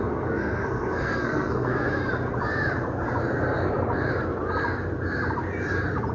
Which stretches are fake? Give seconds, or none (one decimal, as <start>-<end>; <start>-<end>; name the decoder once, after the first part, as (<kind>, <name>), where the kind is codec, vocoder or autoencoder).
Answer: 0.0-2.0 (codec, SNAC)